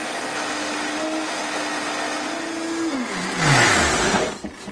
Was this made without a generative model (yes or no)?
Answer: yes